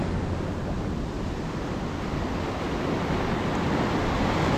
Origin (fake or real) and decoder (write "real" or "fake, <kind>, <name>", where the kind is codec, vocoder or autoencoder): real